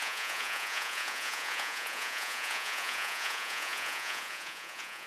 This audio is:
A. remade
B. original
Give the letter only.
A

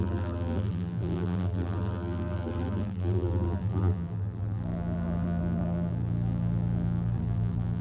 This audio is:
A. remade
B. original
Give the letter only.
A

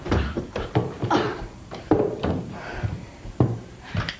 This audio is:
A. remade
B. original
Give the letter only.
A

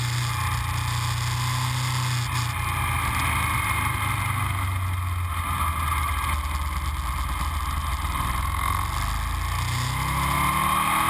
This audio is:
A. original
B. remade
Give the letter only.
A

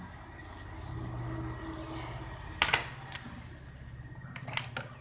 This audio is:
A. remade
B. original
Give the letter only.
B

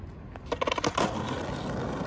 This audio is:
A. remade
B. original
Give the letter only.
B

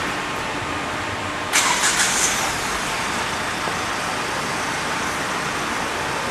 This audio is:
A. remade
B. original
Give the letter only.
B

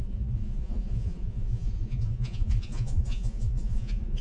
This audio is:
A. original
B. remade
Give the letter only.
B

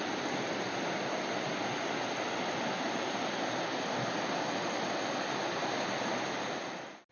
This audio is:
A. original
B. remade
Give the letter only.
A